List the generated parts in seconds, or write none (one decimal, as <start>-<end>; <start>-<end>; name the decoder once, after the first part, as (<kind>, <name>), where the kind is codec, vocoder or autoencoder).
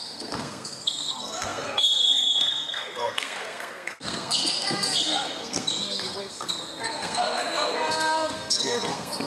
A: 0.0-9.3 (codec, SNAC)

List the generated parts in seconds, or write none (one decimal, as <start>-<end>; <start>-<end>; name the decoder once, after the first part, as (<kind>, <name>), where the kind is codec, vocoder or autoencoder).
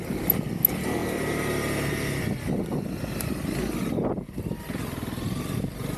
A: none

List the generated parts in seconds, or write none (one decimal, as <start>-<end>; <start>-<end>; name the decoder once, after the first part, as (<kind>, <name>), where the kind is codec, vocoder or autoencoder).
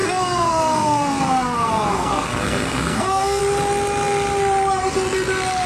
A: 0.0-3.4 (codec, SNAC)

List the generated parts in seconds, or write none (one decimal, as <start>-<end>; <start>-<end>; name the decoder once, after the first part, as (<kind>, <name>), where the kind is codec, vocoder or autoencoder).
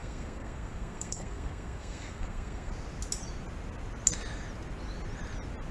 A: 0.0-2.7 (codec, SNAC)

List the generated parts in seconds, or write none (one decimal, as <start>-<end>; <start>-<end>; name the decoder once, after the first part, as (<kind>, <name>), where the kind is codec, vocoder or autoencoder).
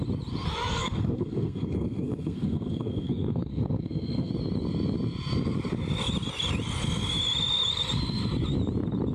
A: 0.7-4.3 (codec, SNAC)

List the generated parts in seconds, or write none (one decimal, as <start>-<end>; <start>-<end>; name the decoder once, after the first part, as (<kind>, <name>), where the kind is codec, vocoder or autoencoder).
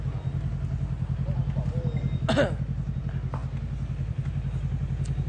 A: none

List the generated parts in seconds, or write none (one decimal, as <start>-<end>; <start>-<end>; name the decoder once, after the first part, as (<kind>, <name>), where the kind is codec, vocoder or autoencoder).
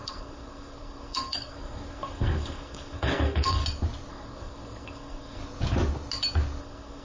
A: 0.0-3.6 (codec, SNAC); 4.1-5.4; 6.6-7.0